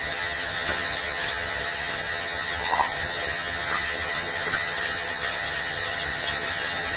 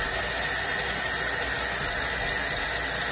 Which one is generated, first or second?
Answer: first